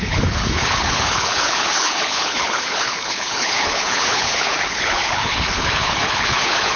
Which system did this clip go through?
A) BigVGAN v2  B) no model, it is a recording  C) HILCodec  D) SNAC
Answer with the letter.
C